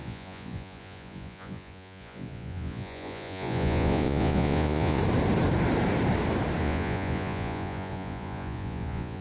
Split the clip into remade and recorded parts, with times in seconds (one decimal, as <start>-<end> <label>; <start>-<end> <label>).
0.0-5.0 remade; 5.0-6.6 recorded; 6.6-9.2 remade